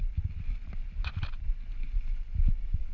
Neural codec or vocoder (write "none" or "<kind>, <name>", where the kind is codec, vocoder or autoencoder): none